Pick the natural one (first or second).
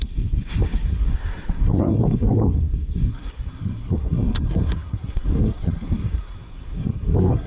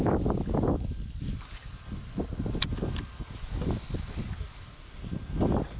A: second